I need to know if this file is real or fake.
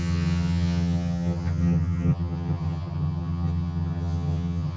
fake